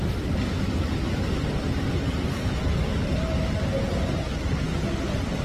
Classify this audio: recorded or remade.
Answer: recorded